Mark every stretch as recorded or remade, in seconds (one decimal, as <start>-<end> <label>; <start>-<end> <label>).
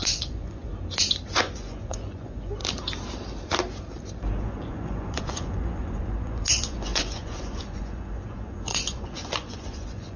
0.0-0.7 remade; 0.7-1.3 recorded; 1.3-2.6 remade; 2.6-4.4 recorded; 4.4-10.2 remade